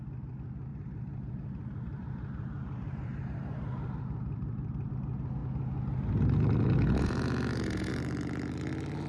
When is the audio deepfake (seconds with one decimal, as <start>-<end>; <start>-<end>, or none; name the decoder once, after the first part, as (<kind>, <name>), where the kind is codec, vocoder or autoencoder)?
0.7-4.9 (vocoder, BigVGAN v2)